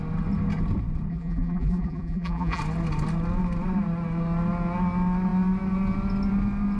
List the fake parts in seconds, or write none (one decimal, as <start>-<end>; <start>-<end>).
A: 1.1-2.6